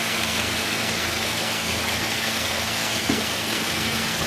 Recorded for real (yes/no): no